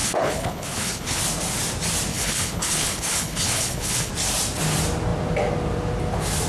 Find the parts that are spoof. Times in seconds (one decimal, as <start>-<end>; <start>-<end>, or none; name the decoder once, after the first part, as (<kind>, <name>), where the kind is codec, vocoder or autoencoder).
0.0-1.2 (codec, HILCodec); 2.1-4.1